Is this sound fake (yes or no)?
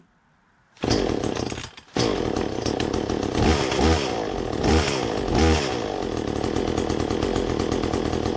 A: no